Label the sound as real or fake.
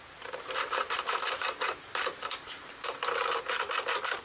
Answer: real